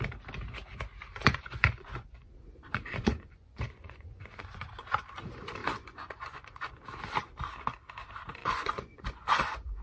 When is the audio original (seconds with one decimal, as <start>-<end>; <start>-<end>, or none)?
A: 0.0-1.1; 4.7-5.6; 6.7-8.4